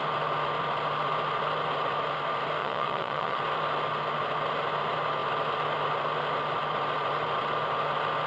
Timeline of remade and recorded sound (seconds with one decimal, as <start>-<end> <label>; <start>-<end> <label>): 0.0-2.6 recorded; 2.6-3.4 remade; 3.4-8.3 recorded